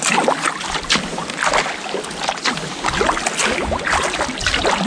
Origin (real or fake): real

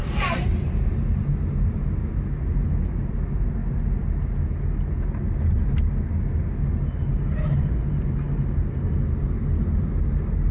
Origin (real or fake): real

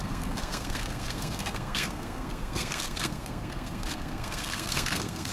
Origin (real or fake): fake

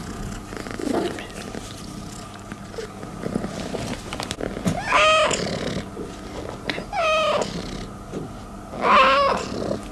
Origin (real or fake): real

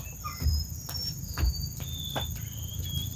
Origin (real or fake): real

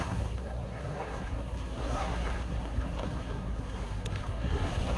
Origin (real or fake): fake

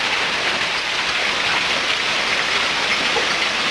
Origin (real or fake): real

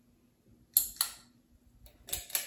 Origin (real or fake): real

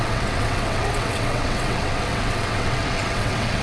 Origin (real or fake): fake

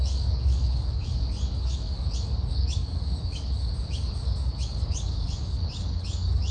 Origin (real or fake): fake